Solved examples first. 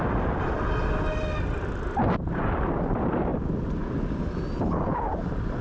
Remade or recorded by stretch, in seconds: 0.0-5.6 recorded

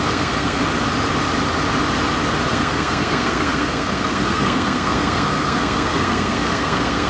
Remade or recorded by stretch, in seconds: 0.0-0.6 remade; 0.6-2.5 recorded; 2.5-7.1 remade

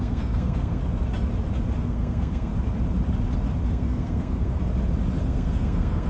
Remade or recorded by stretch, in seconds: 0.0-0.8 remade; 0.8-1.8 recorded; 1.8-2.5 remade; 2.5-3.7 recorded; 3.7-4.6 remade; 4.6-5.2 recorded; 5.2-6.1 remade